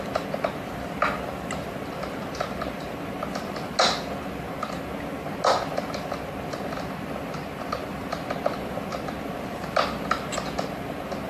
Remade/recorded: recorded